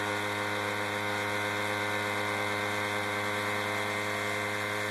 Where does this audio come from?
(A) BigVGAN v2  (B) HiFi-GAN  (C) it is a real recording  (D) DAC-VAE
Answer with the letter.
C